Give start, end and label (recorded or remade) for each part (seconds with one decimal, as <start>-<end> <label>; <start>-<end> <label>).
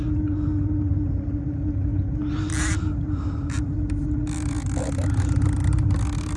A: 0.0-6.4 recorded